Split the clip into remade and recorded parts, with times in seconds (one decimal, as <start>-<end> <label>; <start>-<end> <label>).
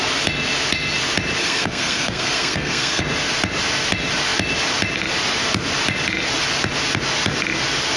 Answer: 0.0-1.4 recorded; 1.4-3.0 remade; 3.0-8.0 recorded